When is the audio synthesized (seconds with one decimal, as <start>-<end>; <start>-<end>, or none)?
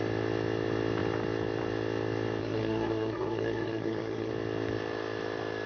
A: 2.4-4.3